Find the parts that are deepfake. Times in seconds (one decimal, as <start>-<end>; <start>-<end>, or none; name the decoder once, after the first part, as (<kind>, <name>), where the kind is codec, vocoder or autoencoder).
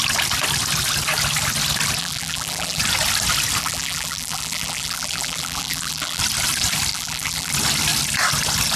2.0-2.8 (vocoder, BigVGAN v2); 3.6-6.2; 6.9-7.5